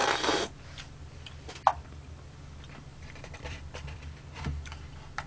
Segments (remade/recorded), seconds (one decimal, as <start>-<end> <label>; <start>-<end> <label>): 0.0-2.4 remade; 2.4-2.9 recorded; 2.9-4.0 remade; 4.0-5.3 recorded